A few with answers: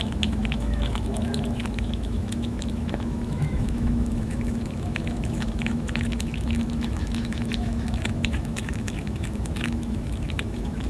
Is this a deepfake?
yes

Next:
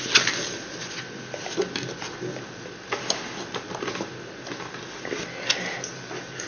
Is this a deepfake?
no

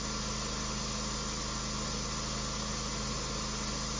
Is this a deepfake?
no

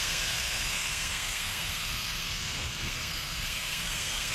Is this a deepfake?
yes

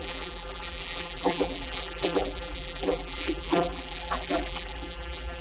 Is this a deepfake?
yes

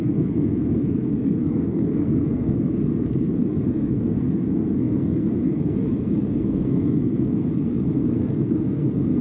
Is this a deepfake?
yes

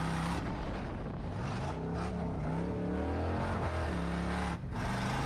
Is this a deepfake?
no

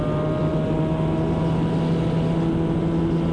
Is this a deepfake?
no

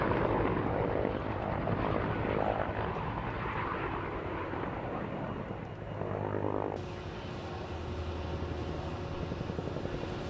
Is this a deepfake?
no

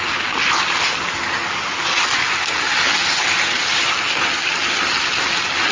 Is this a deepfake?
no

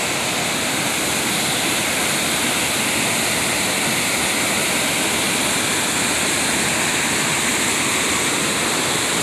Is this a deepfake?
no